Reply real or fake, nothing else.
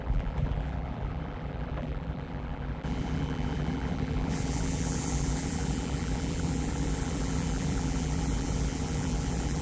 fake